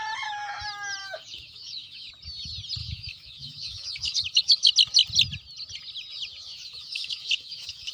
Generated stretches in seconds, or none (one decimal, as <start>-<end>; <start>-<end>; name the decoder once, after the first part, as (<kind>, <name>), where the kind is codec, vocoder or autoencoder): 1.0-2.1 (autoencoder, DAC-VAE); 2.8-4.7; 6.4-7.9